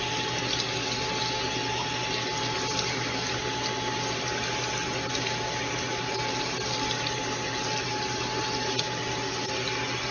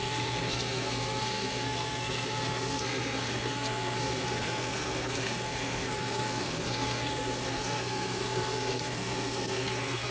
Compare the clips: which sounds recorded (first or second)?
first